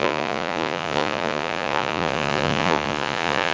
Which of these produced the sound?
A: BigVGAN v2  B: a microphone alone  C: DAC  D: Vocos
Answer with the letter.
D